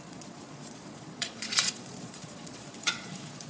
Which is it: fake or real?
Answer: fake